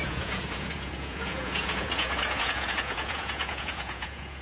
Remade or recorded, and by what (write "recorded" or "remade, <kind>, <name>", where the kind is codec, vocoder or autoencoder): remade, vocoder, Vocos